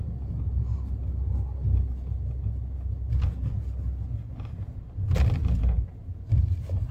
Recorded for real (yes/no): yes